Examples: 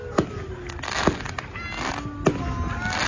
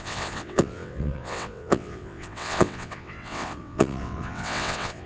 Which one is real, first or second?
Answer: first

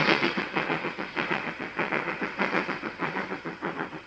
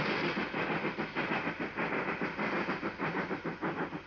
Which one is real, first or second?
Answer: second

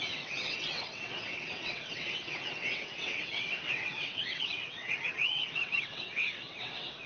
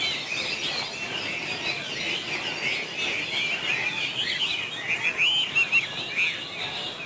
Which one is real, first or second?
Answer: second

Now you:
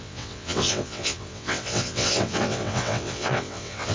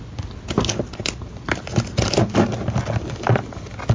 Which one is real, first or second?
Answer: second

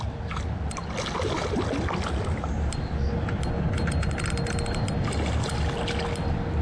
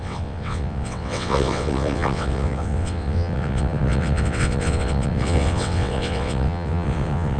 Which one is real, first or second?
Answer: first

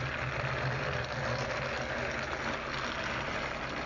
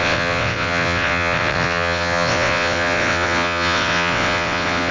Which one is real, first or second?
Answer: first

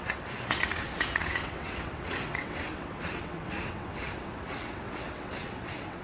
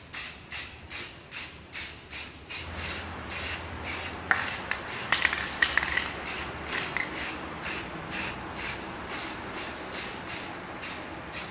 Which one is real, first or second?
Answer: second